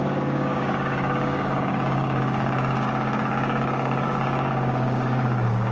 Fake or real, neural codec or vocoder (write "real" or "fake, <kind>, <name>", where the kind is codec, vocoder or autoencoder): fake, codec, DAC